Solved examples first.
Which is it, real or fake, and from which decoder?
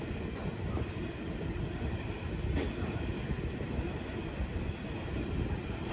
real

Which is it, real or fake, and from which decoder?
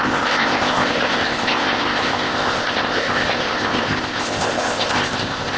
fake, codec, ZipCodec